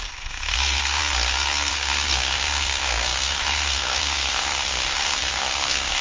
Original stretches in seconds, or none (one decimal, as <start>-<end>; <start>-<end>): 1.0-1.7